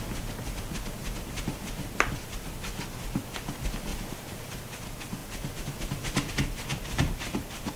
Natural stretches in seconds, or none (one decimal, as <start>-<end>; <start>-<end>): 0.0-1.0; 3.2-3.9; 4.6-6.7